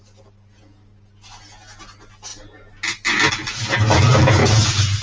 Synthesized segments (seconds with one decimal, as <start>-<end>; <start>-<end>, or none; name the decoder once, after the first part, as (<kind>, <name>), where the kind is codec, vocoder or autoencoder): none